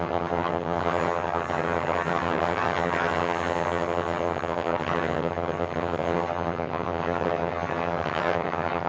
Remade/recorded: remade